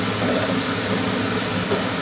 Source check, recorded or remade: recorded